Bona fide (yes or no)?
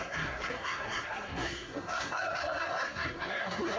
no